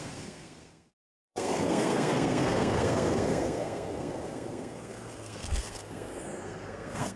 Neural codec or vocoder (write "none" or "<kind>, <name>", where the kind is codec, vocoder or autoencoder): codec, SNAC